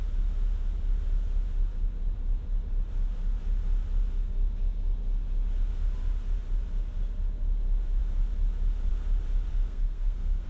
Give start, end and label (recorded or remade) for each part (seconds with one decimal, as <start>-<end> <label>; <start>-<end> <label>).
0.0-9.5 recorded; 9.5-10.5 remade